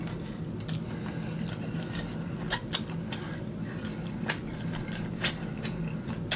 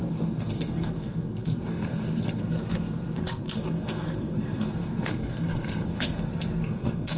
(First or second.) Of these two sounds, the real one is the first